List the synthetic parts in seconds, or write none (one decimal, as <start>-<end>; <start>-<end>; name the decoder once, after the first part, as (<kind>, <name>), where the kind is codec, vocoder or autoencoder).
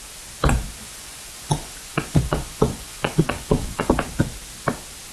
0.8-3.9 (vocoder, Vocos)